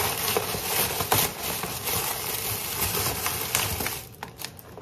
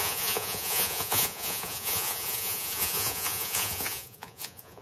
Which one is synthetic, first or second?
second